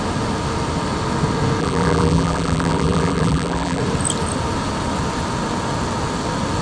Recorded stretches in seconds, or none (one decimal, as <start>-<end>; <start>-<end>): 0.0-1.6; 3.8-6.6